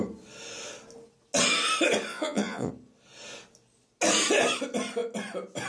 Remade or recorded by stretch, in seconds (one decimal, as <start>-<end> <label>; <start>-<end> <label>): 0.0-2.1 recorded; 2.1-2.7 remade; 2.7-5.7 recorded